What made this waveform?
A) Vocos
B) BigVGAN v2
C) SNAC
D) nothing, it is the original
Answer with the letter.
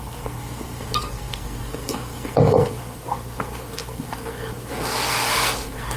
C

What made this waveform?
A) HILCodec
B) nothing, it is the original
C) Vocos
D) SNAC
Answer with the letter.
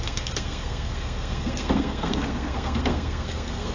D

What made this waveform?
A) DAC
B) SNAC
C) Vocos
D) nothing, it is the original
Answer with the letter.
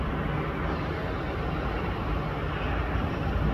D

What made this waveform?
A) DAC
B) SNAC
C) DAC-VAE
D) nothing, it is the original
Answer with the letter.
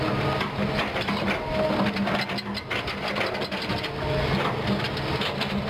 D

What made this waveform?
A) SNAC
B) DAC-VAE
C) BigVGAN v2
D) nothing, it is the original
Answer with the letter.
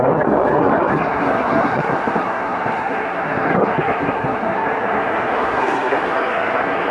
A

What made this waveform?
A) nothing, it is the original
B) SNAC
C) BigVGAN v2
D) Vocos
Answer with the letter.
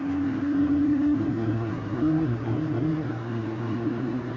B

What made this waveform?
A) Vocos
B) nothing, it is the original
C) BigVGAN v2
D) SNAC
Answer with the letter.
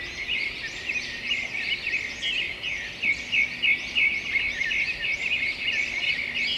B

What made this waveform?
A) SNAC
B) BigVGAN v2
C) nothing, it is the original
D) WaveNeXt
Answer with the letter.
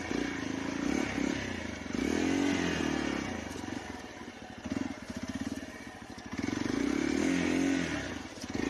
C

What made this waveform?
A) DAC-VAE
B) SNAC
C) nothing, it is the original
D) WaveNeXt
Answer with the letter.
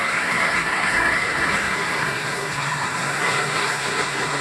B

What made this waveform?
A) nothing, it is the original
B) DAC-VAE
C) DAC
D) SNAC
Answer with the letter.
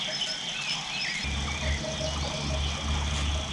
A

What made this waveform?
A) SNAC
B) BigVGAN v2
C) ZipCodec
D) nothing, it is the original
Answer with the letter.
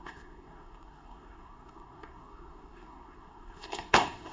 A